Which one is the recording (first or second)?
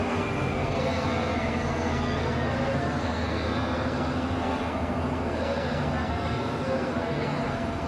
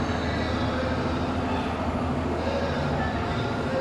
second